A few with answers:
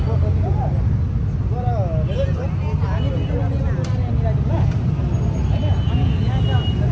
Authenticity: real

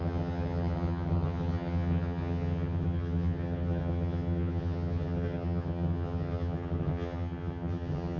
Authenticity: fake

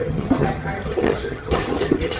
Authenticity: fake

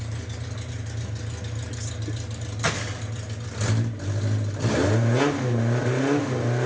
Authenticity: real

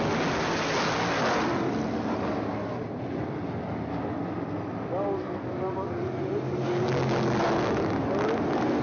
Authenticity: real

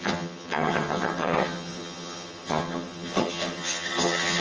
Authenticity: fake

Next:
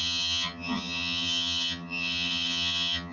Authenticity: fake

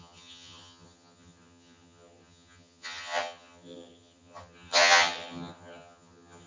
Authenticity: fake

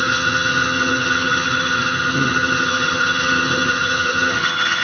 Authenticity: fake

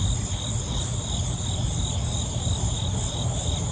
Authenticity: real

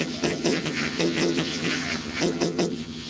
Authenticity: fake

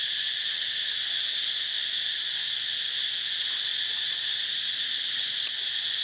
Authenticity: real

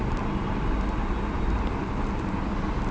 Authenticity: real